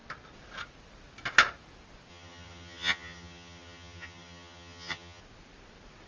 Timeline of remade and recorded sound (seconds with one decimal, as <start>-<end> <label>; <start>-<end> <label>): 0.0-2.1 recorded; 2.1-5.2 remade; 5.2-6.1 recorded